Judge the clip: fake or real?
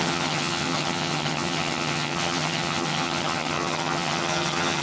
fake